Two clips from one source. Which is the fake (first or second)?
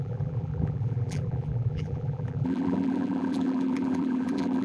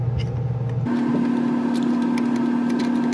first